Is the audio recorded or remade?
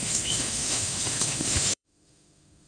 remade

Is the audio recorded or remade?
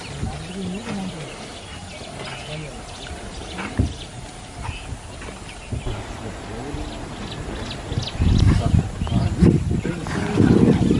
recorded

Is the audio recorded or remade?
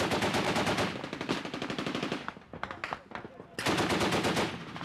recorded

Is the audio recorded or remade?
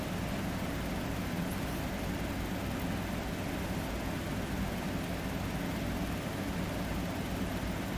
recorded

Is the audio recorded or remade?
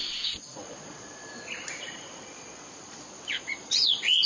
remade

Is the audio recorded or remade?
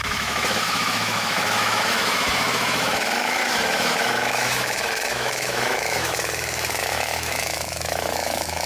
remade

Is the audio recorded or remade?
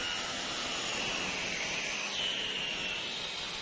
recorded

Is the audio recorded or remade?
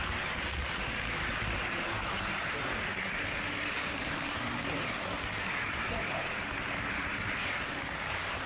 recorded